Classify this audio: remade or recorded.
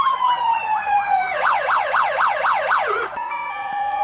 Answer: remade